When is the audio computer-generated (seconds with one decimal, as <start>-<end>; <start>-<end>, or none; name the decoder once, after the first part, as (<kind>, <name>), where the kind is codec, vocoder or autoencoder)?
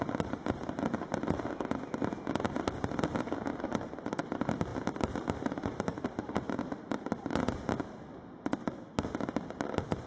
4.7-6.8 (vocoder, BigVGAN v2)